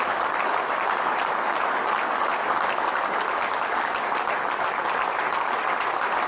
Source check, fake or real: real